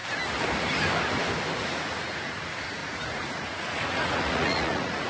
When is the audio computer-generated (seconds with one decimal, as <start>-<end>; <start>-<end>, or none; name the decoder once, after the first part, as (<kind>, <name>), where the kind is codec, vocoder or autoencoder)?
1.6-2.4 (vocoder, Vocos); 2.8-5.1